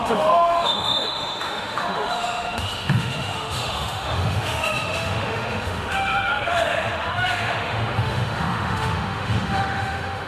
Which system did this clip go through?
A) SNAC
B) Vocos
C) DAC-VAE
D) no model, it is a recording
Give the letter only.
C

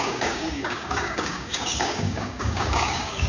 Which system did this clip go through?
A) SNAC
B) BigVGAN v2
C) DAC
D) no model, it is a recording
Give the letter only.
C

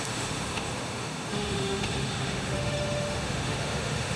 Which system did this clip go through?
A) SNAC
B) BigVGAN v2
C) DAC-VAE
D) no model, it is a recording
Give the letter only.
C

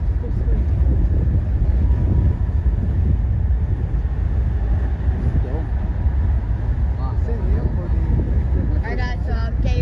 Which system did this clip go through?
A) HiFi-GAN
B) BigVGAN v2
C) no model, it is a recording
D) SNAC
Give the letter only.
C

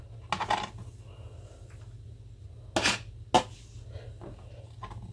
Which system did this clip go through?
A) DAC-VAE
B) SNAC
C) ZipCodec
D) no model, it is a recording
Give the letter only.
D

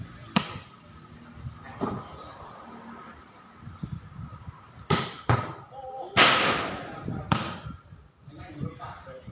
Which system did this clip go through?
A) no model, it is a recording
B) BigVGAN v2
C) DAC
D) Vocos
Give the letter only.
B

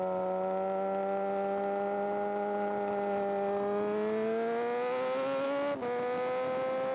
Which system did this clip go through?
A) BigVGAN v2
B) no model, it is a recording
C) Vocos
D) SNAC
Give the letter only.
B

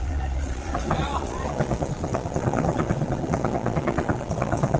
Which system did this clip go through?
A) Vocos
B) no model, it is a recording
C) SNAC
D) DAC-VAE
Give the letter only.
A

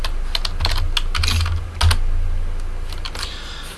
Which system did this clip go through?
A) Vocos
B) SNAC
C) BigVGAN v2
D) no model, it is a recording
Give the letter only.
D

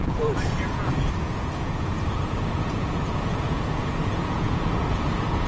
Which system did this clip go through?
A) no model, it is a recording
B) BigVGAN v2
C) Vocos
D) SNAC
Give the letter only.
C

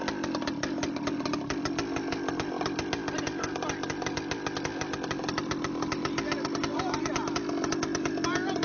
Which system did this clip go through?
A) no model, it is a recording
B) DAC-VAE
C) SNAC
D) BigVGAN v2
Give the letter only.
A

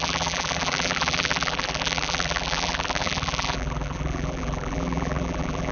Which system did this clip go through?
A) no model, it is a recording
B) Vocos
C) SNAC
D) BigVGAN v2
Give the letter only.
D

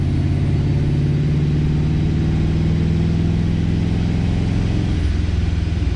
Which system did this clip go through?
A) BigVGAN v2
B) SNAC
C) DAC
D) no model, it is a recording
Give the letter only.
D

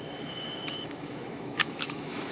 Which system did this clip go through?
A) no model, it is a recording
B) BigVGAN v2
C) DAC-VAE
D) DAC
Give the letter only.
C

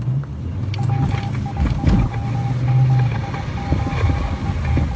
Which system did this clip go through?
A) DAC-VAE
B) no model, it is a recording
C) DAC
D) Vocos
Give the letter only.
B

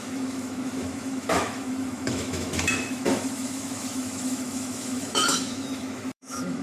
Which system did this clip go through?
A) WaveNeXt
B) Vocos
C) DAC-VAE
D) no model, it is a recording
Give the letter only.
C